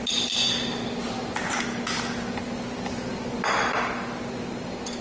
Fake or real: real